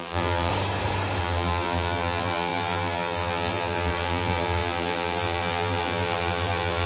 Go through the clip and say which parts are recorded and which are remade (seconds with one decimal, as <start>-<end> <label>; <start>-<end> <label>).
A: 0.0-0.5 remade; 0.5-1.2 recorded; 1.2-6.9 remade